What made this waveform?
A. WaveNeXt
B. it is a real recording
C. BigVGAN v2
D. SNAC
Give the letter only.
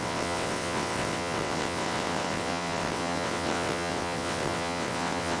A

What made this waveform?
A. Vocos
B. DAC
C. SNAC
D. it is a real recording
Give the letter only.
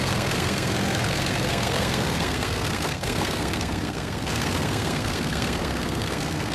C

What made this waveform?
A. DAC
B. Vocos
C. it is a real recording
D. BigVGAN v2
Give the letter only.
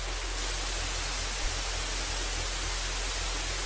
C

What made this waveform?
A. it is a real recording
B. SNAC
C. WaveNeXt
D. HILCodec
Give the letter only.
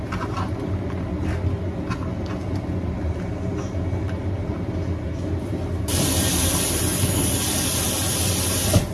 A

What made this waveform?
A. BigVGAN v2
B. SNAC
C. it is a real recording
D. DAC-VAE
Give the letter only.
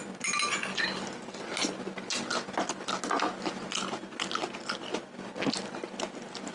C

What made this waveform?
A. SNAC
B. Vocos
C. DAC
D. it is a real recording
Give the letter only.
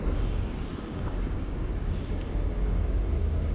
C